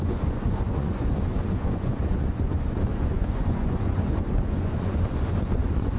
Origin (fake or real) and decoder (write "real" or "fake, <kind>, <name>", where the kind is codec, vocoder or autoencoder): fake, vocoder, Vocos